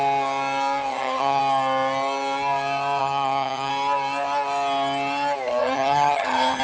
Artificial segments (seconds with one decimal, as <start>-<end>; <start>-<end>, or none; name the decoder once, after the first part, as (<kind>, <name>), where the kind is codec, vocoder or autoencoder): 0.9-1.4 (vocoder, HiFi-GAN); 3.0-3.7; 5.6-6.6